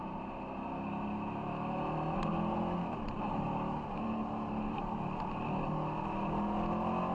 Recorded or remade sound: recorded